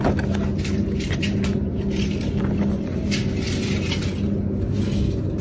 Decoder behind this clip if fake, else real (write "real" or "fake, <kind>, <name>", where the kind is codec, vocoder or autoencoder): real